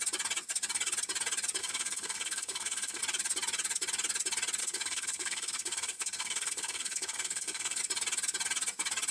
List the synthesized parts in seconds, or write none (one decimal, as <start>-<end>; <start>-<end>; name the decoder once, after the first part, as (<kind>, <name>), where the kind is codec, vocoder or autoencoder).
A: 1.6-3.0 (codec, SNAC); 4.6-7.8